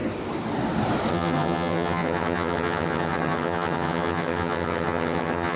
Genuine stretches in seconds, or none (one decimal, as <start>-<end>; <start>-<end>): 0.0-1.1